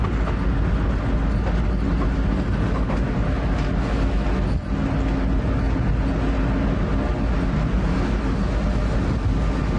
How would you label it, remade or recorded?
recorded